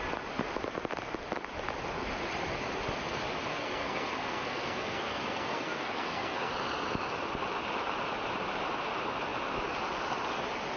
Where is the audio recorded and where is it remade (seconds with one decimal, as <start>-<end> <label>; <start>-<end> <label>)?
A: 0.0-3.5 recorded; 3.5-6.5 remade; 6.5-10.8 recorded